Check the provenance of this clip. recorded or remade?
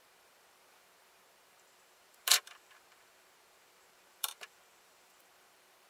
remade